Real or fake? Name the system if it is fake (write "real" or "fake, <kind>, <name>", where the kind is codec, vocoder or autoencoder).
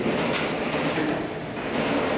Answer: real